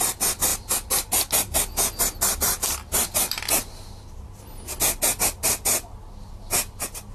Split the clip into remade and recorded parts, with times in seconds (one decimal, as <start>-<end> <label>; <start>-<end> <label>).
0.0-7.1 recorded